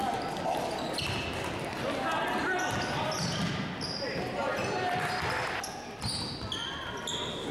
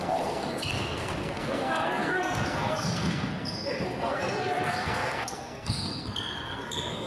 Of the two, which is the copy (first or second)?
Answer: second